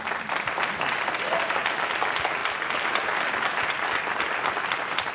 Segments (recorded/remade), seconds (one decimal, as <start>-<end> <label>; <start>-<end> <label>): 0.0-5.1 recorded